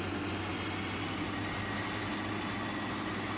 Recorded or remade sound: recorded